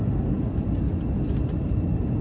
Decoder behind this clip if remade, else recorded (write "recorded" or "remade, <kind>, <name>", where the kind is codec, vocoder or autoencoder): recorded